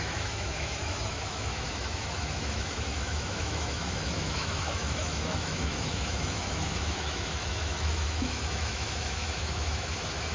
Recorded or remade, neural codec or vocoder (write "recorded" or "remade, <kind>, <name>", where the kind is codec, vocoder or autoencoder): remade, autoencoder, DAC-VAE